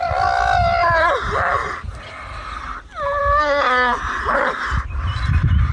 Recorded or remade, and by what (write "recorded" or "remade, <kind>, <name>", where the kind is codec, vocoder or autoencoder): recorded